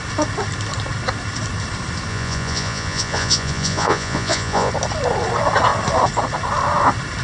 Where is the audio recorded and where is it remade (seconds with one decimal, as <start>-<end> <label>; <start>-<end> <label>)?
0.0-2.1 recorded; 2.1-4.7 remade; 4.7-7.2 recorded